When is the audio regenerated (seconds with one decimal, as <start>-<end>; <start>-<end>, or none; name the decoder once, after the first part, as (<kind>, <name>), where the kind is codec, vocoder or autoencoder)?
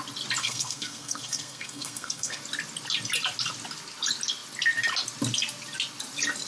0.4-2.4 (codec, SNAC)